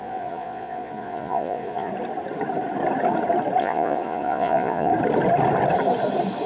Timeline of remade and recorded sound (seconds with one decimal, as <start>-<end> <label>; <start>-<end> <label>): 0.0-1.9 remade; 1.9-3.6 recorded; 3.6-4.9 remade; 4.9-6.5 recorded